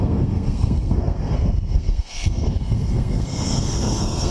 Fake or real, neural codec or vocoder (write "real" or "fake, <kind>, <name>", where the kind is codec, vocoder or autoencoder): fake, codec, SNAC